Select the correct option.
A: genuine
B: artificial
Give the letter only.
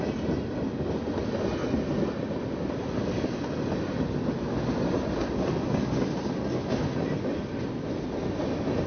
A